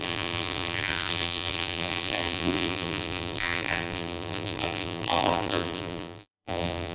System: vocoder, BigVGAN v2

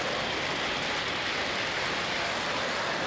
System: none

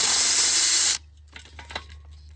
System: none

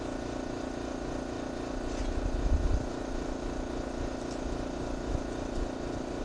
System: none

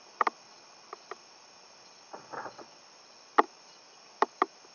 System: vocoder, BigVGAN v2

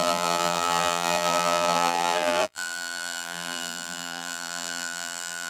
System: vocoder, BigVGAN v2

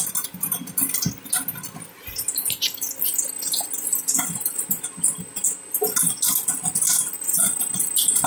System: none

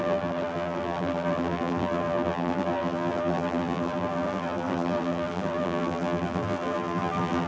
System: vocoder, BigVGAN v2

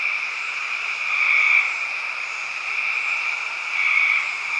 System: vocoder, BigVGAN v2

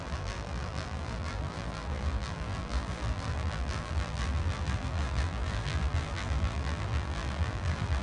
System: vocoder, BigVGAN v2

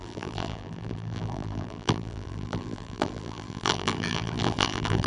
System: vocoder, BigVGAN v2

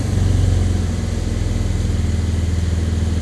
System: none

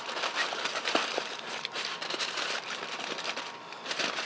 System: vocoder, BigVGAN v2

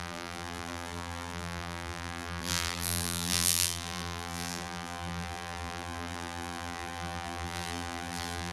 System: vocoder, BigVGAN v2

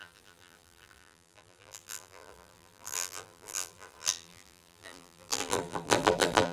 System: vocoder, BigVGAN v2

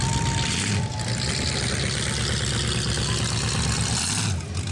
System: none